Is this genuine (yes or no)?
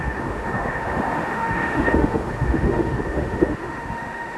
no